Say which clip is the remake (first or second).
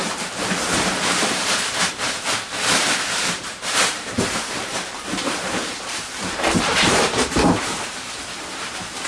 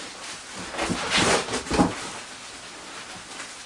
first